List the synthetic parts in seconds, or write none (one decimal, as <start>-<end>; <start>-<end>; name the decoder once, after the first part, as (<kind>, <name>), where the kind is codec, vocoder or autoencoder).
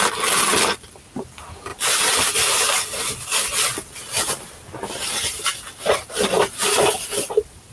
1.7-5.1 (vocoder, BigVGAN v2)